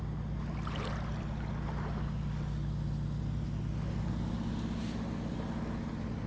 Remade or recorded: recorded